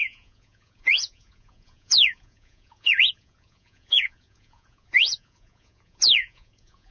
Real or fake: fake